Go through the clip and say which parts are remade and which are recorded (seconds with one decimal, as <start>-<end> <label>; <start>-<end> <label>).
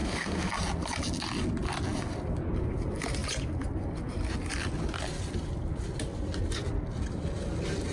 0.0-0.5 remade; 0.5-7.9 recorded